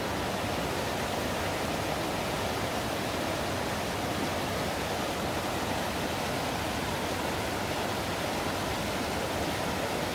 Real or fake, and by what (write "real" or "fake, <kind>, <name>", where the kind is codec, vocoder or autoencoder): real